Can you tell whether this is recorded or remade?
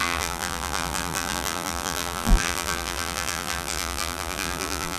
remade